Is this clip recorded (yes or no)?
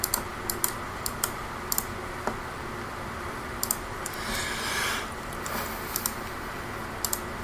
yes